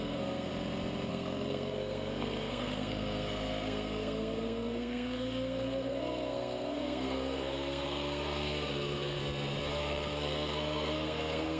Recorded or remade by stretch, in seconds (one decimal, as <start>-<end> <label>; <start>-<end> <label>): 0.0-0.5 remade; 0.5-1.1 recorded; 1.1-9.2 remade; 9.2-9.8 recorded; 9.8-11.6 remade